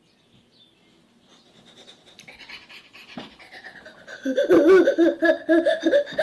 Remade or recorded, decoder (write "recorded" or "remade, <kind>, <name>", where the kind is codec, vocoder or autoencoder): recorded